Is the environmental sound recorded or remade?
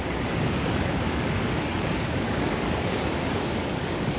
remade